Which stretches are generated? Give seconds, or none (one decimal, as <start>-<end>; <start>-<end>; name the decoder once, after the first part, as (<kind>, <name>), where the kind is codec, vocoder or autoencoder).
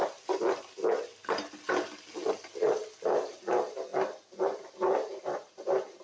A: none